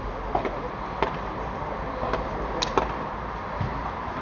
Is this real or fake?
real